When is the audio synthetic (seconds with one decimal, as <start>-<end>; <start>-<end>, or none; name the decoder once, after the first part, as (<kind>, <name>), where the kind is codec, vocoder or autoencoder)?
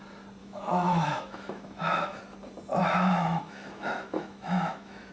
0.4-2.2 (autoencoder, DAC-VAE); 2.8-5.1